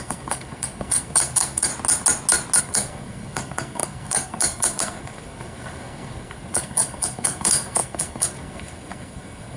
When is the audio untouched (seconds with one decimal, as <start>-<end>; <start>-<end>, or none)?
1.7-2.6